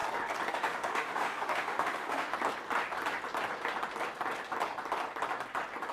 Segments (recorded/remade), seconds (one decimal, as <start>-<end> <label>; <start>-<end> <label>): 0.0-0.5 recorded; 0.5-2.3 remade; 2.3-5.9 recorded